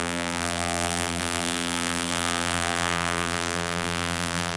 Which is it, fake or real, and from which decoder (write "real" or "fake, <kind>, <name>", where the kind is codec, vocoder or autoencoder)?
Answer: fake, vocoder, BigVGAN v2